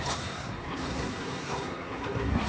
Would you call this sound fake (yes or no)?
yes